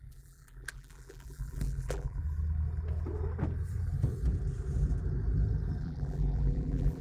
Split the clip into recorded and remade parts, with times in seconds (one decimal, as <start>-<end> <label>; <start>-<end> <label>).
0.0-2.2 remade; 2.2-5.8 recorded; 5.8-7.0 remade